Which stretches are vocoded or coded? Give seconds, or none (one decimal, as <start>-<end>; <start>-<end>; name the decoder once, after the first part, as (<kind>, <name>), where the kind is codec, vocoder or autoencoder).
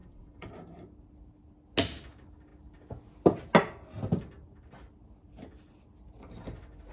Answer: 0.0-0.5 (vocoder, WaveNeXt)